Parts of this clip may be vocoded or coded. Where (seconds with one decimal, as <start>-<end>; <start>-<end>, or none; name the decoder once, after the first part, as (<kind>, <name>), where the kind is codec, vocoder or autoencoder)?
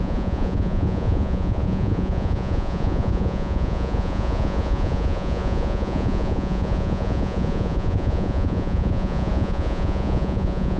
0.0-10.8 (vocoder, Vocos)